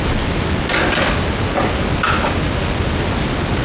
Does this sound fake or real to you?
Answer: real